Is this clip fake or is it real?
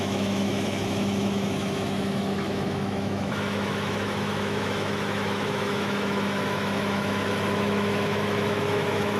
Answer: fake